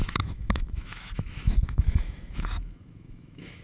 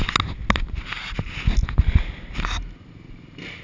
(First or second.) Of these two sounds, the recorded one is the second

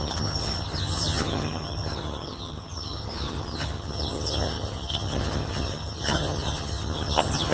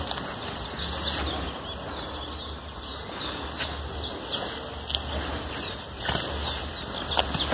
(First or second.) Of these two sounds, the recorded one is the second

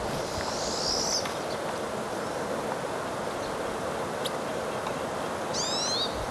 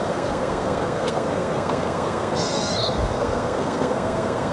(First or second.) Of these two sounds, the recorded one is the first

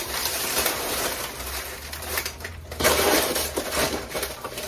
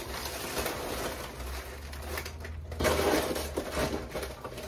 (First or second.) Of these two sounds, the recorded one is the second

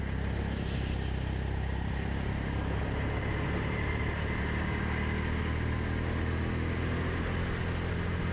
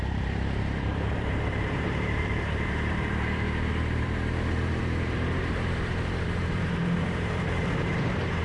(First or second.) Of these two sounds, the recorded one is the first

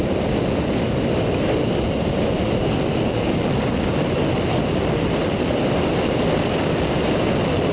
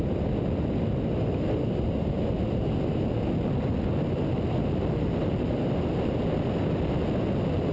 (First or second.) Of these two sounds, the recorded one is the second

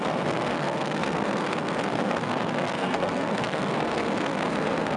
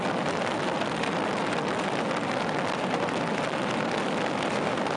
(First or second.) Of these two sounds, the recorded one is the second